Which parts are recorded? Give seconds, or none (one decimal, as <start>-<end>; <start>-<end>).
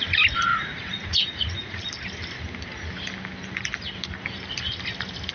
0.0-0.5; 1.8-5.3